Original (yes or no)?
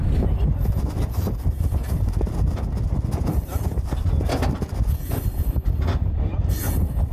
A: yes